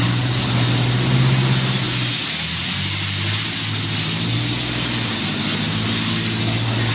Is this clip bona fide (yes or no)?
yes